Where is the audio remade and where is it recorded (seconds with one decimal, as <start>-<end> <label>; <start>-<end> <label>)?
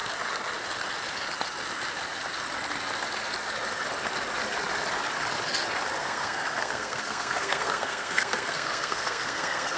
0.0-6.0 recorded; 6.0-9.8 remade